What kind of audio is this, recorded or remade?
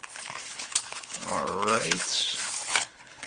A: remade